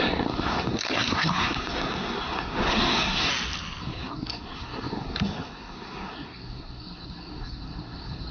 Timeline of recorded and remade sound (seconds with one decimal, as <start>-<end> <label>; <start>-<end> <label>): 0.0-3.3 remade; 3.3-3.8 recorded; 3.8-8.3 remade